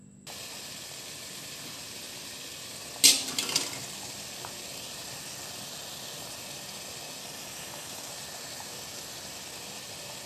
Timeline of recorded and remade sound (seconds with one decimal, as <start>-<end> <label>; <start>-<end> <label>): 0.0-7.2 recorded; 7.2-8.1 remade; 8.1-10.3 recorded